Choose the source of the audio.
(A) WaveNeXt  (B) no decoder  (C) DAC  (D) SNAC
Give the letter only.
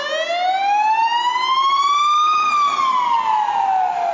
B